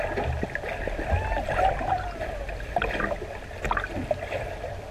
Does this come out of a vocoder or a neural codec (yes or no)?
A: no